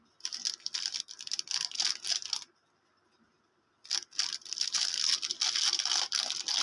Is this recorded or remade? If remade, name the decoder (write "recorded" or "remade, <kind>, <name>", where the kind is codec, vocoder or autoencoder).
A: recorded